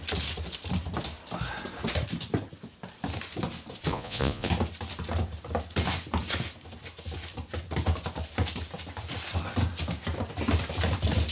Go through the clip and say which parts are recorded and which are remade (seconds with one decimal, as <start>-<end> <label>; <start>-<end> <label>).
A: 0.0-3.9 recorded; 3.9-4.5 remade; 4.5-11.3 recorded